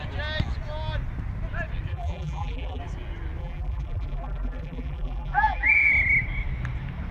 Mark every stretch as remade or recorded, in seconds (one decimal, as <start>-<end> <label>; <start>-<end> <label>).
0.0-1.9 recorded; 1.9-2.8 remade; 2.8-3.4 recorded; 3.4-5.9 remade; 5.9-7.1 recorded